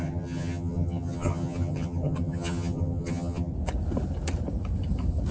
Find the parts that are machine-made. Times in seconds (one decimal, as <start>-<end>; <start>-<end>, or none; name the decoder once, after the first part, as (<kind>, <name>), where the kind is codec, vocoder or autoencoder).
0.0-3.5 (vocoder, HiFi-GAN)